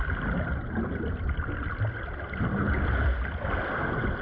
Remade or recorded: recorded